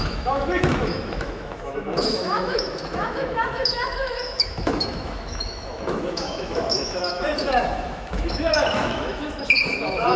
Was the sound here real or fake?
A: fake